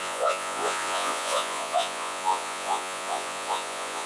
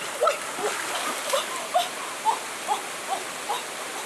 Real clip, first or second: second